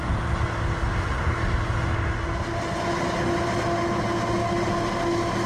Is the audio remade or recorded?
recorded